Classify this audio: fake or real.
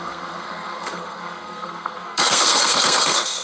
fake